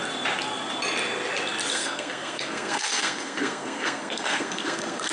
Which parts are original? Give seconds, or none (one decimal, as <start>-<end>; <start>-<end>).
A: 0.0-1.7